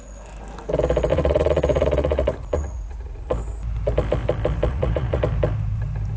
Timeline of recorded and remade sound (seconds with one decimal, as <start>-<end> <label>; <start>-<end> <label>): 0.0-1.1 recorded; 1.1-3.3 remade; 3.3-4.7 recorded; 4.7-5.2 remade; 5.2-6.2 recorded